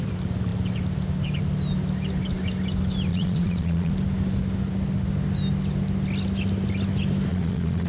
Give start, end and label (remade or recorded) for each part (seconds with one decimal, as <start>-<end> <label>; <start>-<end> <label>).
0.0-3.1 recorded; 3.1-3.9 remade; 3.9-7.3 recorded; 7.3-7.9 remade